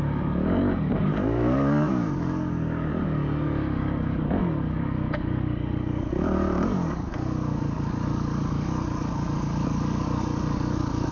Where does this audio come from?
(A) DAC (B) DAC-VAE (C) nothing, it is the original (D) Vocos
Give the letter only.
A